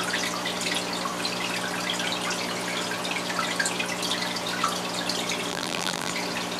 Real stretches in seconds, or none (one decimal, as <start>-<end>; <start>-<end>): 0.0-5.5; 6.1-6.6